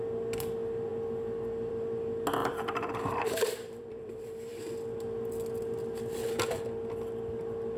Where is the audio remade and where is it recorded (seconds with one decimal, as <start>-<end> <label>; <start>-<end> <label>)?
0.0-2.4 recorded; 2.4-4.6 remade; 4.6-7.8 recorded